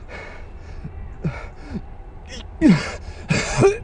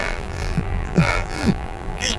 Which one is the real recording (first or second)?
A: first